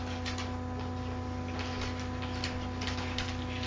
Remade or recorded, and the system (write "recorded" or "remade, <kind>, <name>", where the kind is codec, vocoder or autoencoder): recorded